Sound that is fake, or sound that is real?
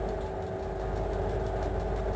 real